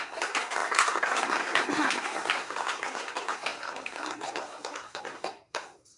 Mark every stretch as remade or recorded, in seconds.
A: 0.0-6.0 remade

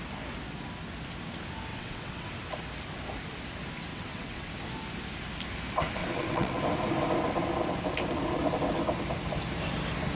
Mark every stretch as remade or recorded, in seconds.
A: 0.0-1.7 recorded; 1.7-2.3 remade; 2.3-3.9 recorded; 3.9-4.5 remade; 4.5-6.0 recorded; 6.0-6.6 remade; 6.6-10.1 recorded

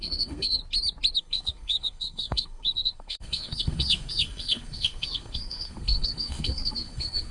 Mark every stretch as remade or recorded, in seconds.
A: 0.0-0.6 remade; 0.6-1.2 recorded; 1.2-7.3 remade

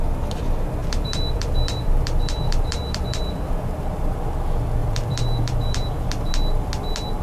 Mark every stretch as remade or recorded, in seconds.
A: 0.0-0.8 recorded; 0.8-3.6 remade; 3.6-4.8 recorded; 4.8-6.3 remade; 6.3-7.2 recorded